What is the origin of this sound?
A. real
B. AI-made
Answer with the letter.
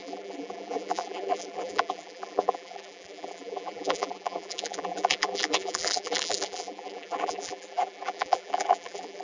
B